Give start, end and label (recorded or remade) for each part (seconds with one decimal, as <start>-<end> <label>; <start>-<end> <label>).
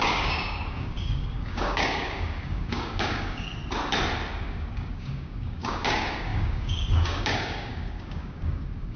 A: 0.0-3.5 remade; 3.5-4.4 recorded; 4.4-9.0 remade